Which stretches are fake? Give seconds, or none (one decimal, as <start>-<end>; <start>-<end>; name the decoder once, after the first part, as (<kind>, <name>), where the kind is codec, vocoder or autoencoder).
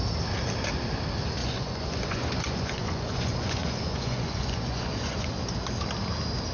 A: 1.4-5.3 (vocoder, Vocos)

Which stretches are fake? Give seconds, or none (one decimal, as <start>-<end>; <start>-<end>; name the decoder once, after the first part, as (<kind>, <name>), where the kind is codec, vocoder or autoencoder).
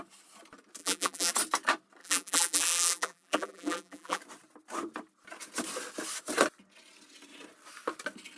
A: 0.8-1.3 (vocoder, BigVGAN v2); 2.0-4.2